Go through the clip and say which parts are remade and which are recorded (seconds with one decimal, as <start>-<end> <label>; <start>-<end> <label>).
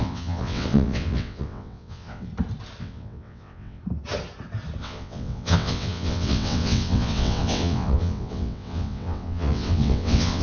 0.0-2.3 remade; 2.3-2.8 recorded; 2.8-3.8 remade; 3.8-4.8 recorded; 4.8-10.4 remade